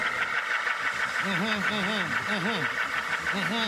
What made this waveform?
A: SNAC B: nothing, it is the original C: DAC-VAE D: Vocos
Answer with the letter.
B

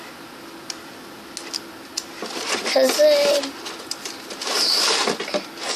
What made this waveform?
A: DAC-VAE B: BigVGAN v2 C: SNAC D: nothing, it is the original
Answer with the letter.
D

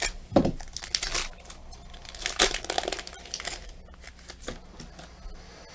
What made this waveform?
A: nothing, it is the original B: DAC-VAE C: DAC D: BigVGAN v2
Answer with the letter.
A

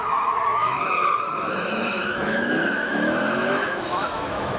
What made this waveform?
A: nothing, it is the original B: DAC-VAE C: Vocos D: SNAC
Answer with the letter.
B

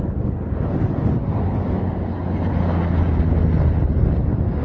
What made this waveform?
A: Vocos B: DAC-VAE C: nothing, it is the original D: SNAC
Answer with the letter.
C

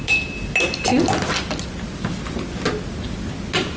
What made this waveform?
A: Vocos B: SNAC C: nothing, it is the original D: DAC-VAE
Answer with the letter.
C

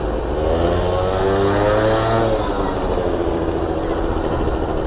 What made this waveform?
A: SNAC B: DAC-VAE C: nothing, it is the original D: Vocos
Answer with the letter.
C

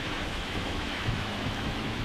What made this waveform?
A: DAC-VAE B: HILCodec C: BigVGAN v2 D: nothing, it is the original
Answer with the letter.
A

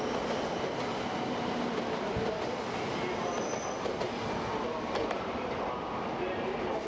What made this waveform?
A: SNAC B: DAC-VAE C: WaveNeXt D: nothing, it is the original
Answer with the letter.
D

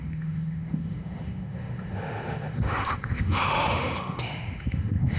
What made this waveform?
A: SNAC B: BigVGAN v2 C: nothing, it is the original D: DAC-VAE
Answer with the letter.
D